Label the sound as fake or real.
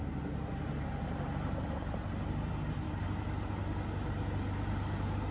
real